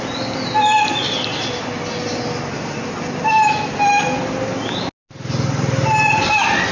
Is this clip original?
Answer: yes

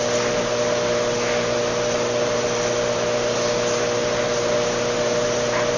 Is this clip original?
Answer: yes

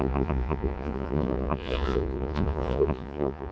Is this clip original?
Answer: no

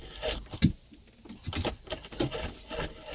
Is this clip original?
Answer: yes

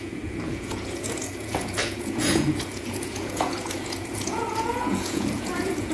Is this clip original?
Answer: no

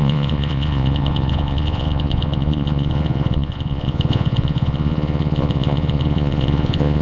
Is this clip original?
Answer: no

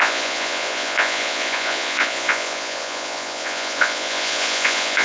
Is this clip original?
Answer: no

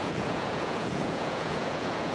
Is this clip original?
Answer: no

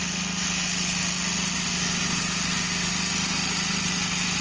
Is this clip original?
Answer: yes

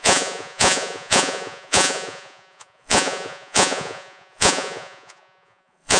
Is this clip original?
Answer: no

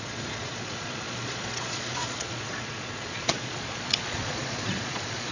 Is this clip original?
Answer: no